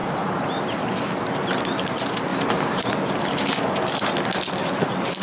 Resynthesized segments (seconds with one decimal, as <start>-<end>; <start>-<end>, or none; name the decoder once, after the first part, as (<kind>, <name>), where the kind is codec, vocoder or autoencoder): 0.0-0.6 (vocoder, BigVGAN v2); 2.3-2.9